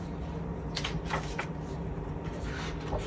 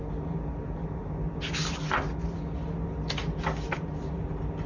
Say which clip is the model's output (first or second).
first